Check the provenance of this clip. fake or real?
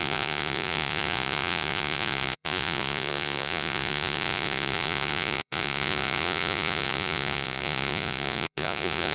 fake